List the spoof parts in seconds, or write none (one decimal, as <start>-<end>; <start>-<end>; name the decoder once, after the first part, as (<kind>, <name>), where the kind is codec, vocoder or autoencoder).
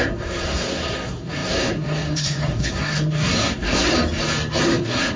0.0-3.9 (codec, SNAC); 4.6-5.2